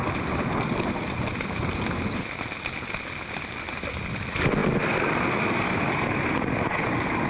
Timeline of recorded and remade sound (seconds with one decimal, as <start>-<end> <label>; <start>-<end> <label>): 0.0-7.3 recorded